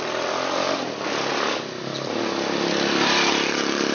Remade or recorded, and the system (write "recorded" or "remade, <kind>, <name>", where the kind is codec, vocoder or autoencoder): recorded